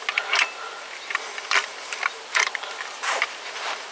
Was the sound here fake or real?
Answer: fake